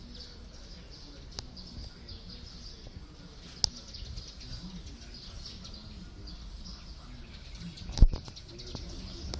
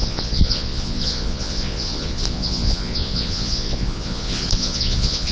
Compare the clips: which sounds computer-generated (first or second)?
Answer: second